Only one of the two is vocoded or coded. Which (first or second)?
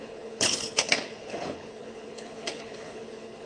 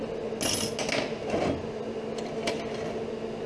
first